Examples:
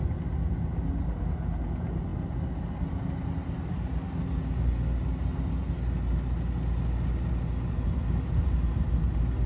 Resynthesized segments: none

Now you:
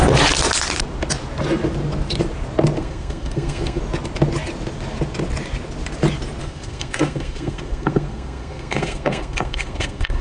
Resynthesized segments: 2.8-3.8 (codec, SNAC); 6.4-10.2

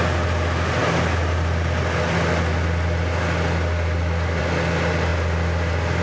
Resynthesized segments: none

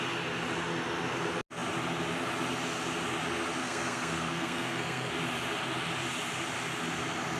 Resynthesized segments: 3.6-5.1 (codec, SNAC)

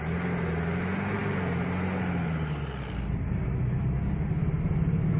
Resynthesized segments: none

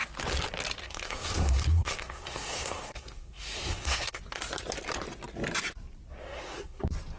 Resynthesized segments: 0.8-4.2 (codec, SNAC); 6.2-6.8

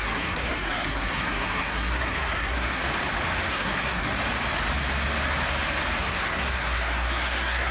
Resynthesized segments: 0.0-2.8 (codec, SNAC); 3.5-4.1; 6.0-7.7